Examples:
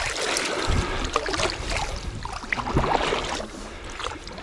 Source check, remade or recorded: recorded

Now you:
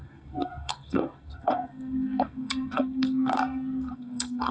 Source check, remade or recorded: remade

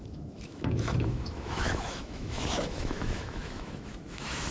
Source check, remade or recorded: remade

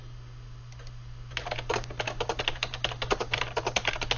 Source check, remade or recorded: recorded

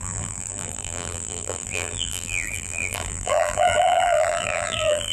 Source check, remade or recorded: remade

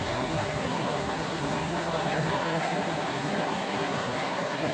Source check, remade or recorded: remade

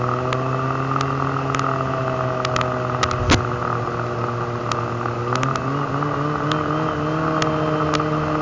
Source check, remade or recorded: recorded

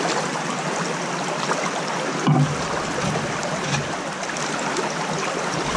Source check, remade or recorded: recorded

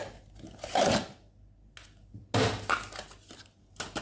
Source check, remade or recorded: recorded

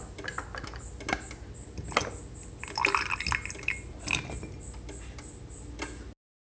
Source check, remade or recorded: recorded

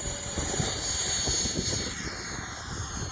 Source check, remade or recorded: recorded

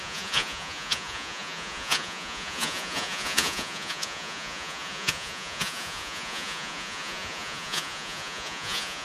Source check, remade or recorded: remade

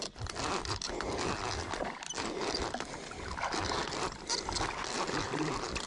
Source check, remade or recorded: recorded